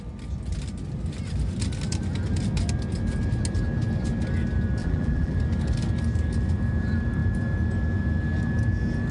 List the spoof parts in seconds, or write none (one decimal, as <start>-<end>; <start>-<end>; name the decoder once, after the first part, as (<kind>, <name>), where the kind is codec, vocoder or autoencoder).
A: 4.8-5.4 (vocoder, BigVGAN v2)